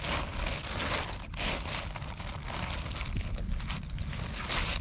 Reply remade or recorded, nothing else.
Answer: recorded